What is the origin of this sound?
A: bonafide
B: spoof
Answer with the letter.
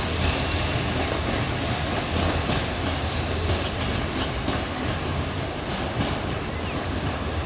A